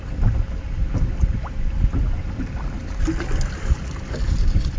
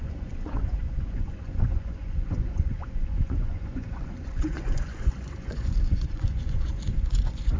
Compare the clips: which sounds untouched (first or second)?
first